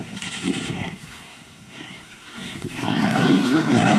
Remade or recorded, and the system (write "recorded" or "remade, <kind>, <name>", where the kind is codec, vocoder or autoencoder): remade, codec, SNAC